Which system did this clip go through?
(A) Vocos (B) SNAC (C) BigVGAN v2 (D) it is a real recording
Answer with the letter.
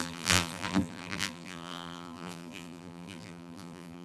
C